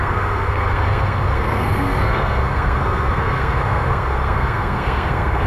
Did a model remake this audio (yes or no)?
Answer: yes